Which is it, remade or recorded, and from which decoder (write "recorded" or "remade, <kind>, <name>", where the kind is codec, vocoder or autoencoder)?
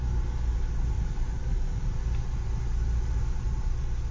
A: recorded